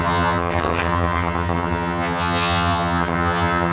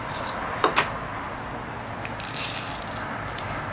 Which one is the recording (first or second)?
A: second